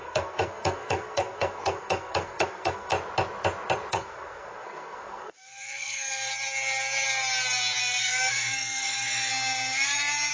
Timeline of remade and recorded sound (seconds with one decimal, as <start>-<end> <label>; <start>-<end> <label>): 0.0-2.9 remade; 2.9-3.9 recorded; 3.9-6.3 remade; 6.3-7.8 recorded; 7.8-9.3 remade; 9.3-10.3 recorded

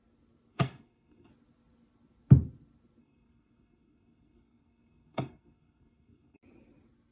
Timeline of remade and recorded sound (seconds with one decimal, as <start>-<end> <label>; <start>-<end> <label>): 0.0-0.5 recorded; 0.5-1.3 remade; 1.3-3.0 recorded; 3.0-6.4 remade; 6.4-7.1 recorded

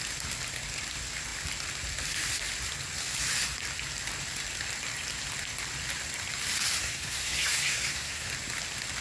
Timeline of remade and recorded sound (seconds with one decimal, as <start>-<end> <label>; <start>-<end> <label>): 0.0-6.8 recorded; 6.8-8.3 remade; 8.3-9.0 recorded

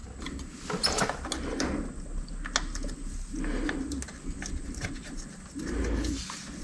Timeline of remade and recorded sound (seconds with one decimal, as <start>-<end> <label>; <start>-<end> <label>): 0.0-6.6 recorded

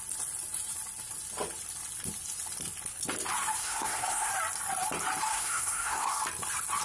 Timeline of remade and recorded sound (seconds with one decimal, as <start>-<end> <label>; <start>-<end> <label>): 0.0-3.6 recorded; 3.6-4.3 remade; 4.3-5.3 recorded; 5.3-6.2 remade; 6.2-6.8 recorded